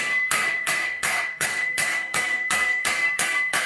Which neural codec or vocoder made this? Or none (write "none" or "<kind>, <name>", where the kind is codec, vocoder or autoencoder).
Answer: codec, SNAC